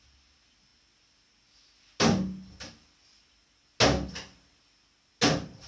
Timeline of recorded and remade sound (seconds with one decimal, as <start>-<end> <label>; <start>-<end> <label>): 0.0-5.7 recorded